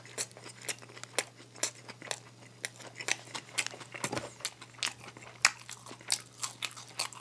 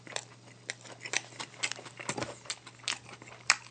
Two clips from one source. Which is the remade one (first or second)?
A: second